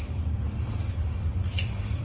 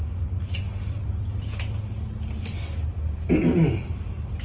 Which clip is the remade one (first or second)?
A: first